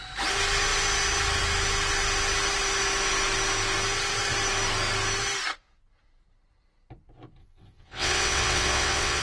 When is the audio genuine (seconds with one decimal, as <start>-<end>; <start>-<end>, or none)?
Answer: 0.0-7.4